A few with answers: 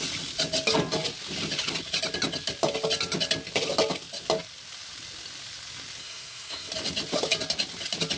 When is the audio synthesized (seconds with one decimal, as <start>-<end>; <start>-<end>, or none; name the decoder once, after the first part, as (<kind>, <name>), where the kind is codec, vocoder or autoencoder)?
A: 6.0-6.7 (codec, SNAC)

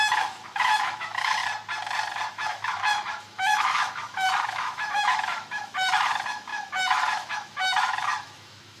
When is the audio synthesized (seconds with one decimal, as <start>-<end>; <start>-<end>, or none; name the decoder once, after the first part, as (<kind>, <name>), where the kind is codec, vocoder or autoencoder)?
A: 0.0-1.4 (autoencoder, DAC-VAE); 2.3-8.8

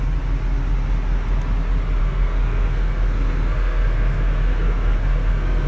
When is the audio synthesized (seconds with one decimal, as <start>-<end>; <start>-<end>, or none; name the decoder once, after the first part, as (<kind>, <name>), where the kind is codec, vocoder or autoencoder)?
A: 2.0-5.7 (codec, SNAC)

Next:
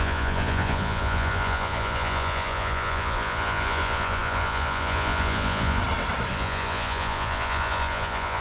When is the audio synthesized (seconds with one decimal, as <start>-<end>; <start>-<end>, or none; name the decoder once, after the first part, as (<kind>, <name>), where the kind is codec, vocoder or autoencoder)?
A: 0.0-5.8 (vocoder, Vocos); 6.3-8.4

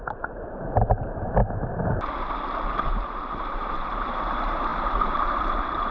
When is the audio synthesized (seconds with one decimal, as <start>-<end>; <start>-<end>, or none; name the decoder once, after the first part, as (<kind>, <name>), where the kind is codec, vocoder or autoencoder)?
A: 0.0-1.4 (vocoder, BigVGAN v2); 2.9-5.9

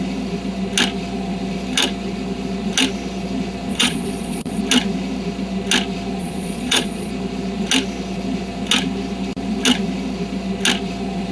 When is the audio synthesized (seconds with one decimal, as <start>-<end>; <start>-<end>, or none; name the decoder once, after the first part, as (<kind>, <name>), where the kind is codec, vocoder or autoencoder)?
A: 3.7-4.6 (vocoder, Vocos); 6.2-7.1

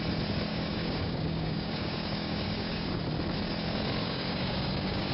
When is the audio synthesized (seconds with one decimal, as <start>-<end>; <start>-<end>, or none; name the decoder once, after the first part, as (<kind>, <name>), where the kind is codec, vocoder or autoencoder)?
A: 0.5-3.0 (codec, DAC); 4.0-5.1

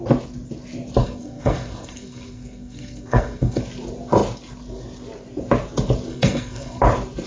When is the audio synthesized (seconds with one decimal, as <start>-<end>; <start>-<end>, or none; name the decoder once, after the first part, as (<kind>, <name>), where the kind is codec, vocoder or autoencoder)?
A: 1.0-3.6 (codec, SNAC); 6.1-6.8